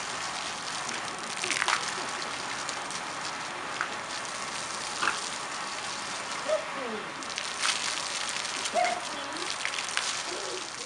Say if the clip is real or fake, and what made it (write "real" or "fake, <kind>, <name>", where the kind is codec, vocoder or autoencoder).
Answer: real